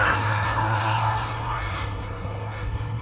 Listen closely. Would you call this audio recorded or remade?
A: remade